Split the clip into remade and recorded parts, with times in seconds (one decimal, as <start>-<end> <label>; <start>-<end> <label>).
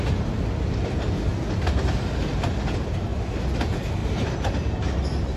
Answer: 0.0-4.0 recorded; 4.0-4.5 remade; 4.5-5.4 recorded